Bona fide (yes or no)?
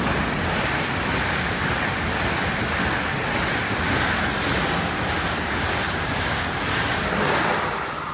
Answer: yes